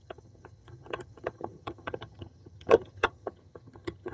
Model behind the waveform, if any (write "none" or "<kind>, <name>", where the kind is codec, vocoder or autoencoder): vocoder, HiFi-GAN